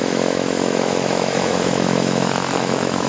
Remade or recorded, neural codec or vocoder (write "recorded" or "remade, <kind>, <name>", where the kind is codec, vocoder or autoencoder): remade, autoencoder, DAC-VAE